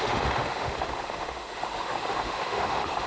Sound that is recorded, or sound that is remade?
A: remade